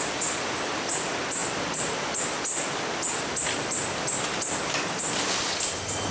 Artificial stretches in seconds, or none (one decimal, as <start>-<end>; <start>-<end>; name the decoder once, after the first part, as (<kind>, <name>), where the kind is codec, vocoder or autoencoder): none